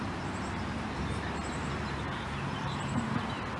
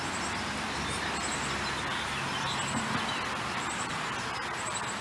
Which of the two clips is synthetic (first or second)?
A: first